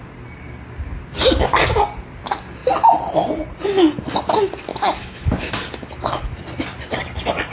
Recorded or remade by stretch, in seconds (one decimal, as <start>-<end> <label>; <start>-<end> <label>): 0.0-4.7 recorded; 4.7-5.6 remade; 5.6-7.5 recorded